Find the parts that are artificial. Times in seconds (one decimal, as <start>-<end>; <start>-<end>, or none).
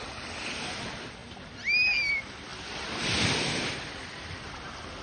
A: none